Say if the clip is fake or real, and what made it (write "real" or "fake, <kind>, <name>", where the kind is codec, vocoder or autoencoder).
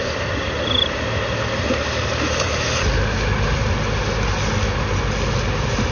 real